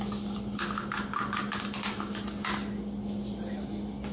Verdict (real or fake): real